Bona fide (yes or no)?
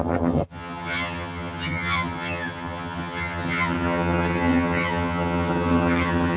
no